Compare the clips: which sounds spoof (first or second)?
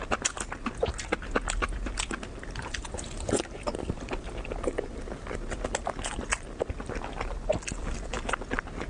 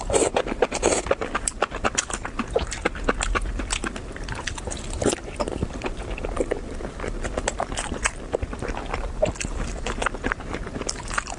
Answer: second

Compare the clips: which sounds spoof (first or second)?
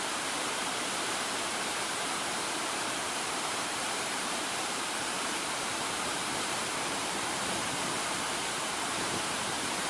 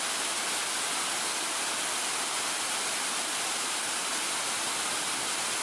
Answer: first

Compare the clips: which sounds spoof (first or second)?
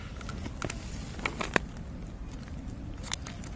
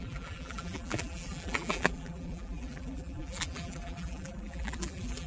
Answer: second